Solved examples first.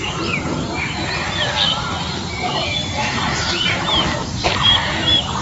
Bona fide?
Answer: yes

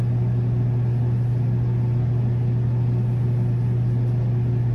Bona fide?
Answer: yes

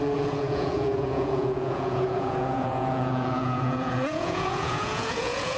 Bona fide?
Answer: no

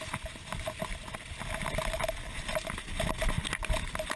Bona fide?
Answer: yes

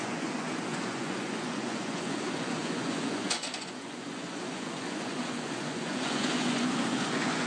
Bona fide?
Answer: no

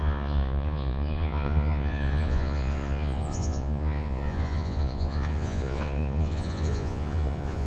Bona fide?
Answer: no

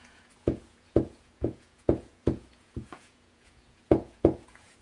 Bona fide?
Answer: no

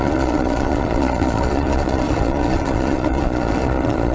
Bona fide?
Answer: no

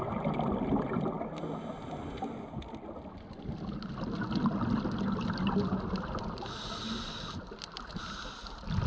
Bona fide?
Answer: yes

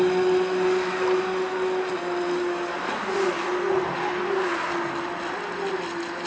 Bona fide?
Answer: yes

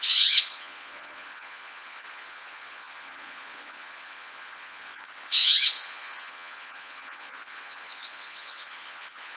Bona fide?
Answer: no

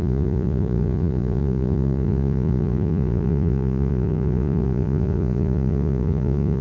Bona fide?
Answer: no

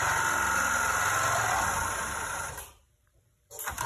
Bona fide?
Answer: yes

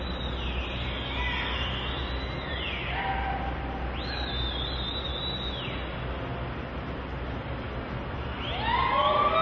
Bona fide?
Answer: yes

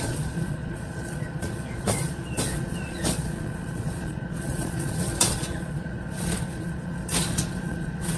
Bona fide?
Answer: no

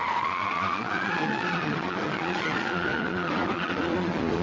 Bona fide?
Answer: no